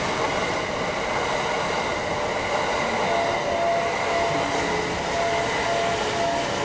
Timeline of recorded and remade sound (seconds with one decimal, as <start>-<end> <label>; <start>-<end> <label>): 0.0-6.6 recorded